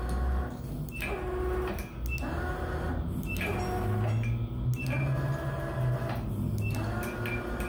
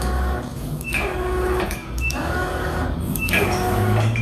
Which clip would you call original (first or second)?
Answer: first